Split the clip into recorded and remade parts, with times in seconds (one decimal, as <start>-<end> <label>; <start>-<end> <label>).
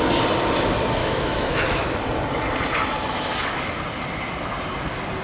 0.0-1.0 recorded; 1.0-2.0 remade; 2.0-5.2 recorded